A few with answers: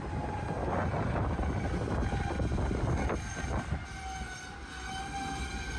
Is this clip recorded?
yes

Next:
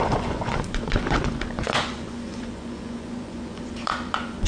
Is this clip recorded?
no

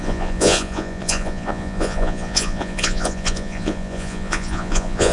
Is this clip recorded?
no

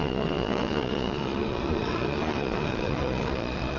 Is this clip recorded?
no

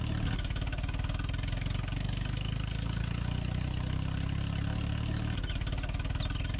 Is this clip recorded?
yes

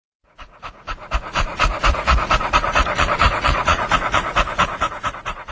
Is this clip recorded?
no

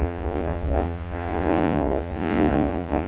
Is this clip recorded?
no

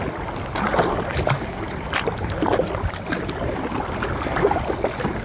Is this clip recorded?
yes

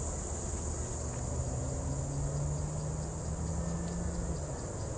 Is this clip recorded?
yes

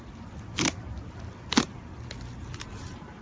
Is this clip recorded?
yes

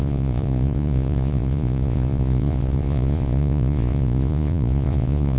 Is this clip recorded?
no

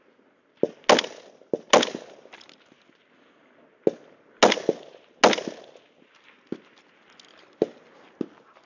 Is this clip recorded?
yes